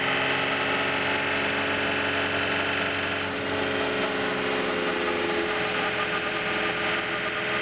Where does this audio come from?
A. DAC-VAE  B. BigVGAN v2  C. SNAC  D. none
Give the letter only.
D